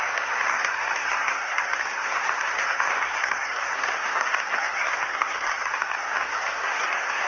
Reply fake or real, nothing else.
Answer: fake